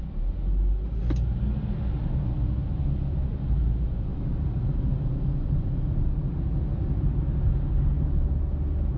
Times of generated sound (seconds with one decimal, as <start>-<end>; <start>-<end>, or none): 4.1-5.2